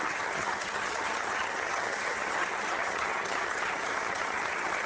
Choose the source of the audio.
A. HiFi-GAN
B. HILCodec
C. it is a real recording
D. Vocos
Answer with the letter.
A